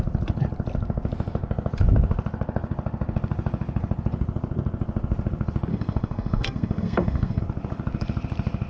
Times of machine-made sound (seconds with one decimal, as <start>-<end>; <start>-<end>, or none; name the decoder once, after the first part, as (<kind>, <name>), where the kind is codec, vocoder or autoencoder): 5.7-7.4 (codec, SNAC)